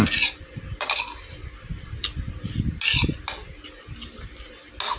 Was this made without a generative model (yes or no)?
yes